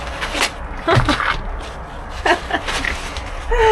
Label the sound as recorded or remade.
recorded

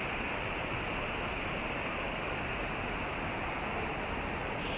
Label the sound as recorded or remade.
recorded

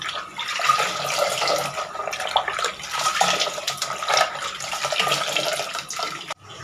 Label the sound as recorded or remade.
remade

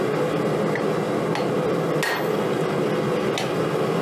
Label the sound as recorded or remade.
recorded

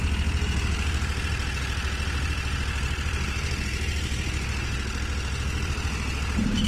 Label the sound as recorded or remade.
recorded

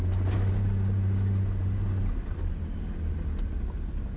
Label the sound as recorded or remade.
recorded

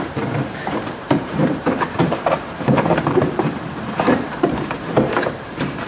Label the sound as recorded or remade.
remade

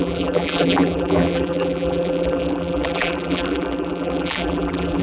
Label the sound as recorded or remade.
remade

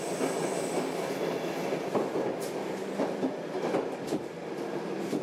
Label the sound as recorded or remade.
remade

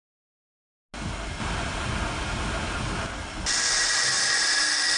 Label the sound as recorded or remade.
recorded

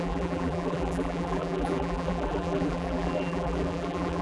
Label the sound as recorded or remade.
remade